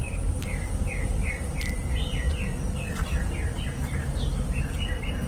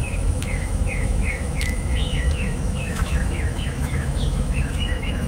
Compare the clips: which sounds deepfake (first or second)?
second